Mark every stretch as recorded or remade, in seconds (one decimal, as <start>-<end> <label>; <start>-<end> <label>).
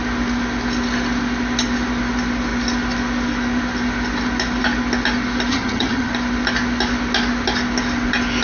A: 0.0-5.5 recorded; 5.5-6.1 remade; 6.1-8.4 recorded